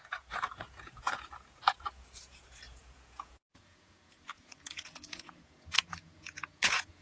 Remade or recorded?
remade